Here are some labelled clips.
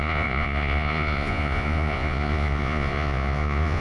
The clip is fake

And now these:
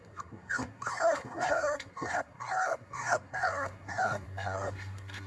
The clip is fake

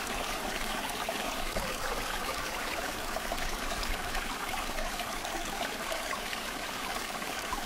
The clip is fake